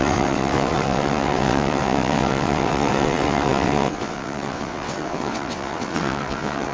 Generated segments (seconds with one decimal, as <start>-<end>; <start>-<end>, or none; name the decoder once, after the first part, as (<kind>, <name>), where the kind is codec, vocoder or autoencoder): 0.0-6.7 (vocoder, WaveNeXt)